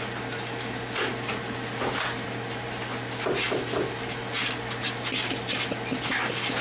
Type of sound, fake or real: real